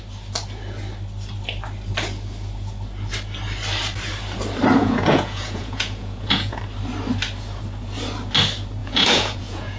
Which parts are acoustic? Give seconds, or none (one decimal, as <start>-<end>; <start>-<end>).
0.0-4.8; 6.6-8.8